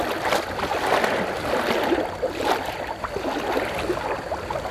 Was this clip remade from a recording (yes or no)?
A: no